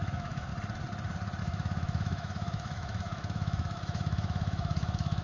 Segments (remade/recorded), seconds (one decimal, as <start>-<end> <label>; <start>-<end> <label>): 0.0-0.5 remade; 0.5-1.4 recorded; 1.4-5.2 remade